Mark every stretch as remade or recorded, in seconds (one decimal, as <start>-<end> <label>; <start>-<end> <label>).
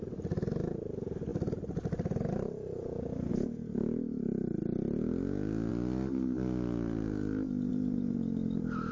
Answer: 0.0-8.9 recorded